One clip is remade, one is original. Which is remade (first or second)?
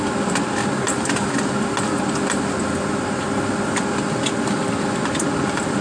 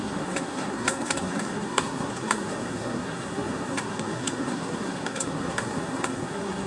second